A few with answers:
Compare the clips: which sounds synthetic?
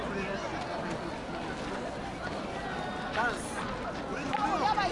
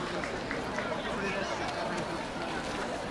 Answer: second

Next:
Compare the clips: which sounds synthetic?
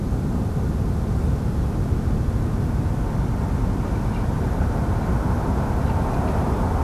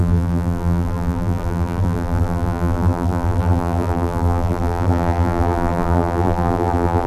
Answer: second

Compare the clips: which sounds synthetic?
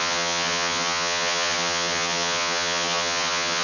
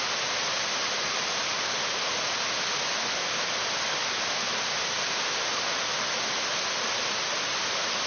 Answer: first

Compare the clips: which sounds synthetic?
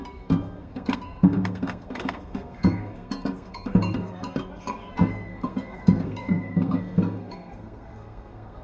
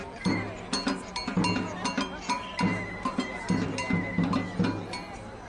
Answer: first